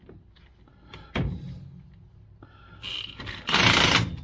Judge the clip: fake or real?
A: real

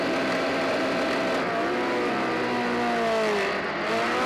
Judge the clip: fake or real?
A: real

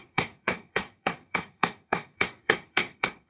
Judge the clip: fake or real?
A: fake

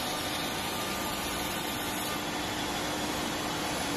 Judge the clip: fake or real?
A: real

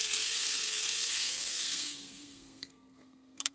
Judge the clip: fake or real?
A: fake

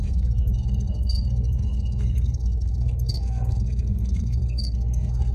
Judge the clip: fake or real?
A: fake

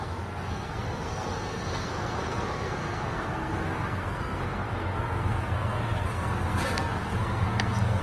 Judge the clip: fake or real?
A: fake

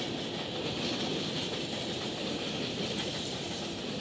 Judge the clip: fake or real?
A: real